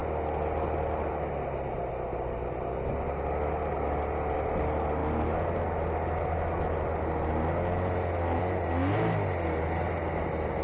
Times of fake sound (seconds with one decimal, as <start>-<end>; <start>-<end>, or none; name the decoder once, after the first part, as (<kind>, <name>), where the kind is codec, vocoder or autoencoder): none